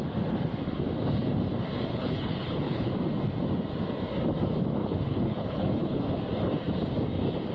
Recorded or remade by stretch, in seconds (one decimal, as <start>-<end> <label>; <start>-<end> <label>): 0.0-1.9 recorded; 1.9-2.9 remade; 2.9-4.8 recorded; 4.8-6.0 remade; 6.0-7.5 recorded